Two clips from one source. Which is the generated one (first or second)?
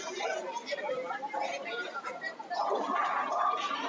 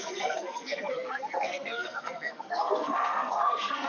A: second